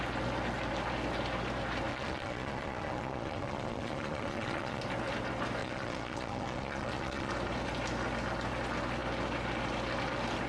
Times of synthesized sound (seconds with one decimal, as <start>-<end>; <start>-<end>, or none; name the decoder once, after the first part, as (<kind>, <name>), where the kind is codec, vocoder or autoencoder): 1.9-4.8 (vocoder, Vocos); 5.6-7.3